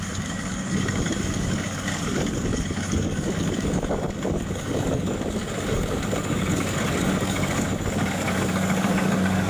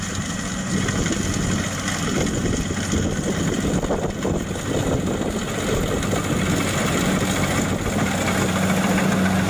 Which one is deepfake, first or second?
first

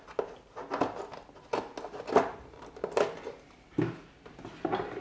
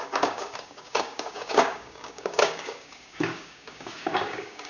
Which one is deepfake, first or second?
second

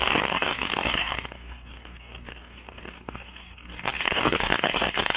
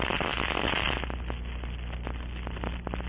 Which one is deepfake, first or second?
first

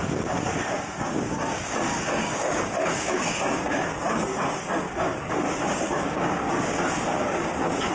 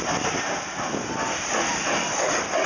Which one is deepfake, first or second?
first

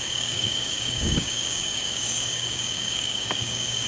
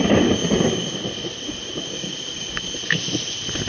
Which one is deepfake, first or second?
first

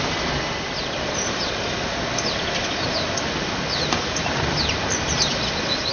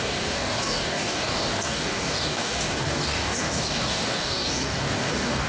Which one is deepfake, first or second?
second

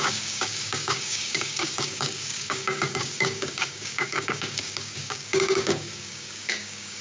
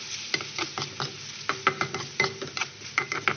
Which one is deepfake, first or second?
first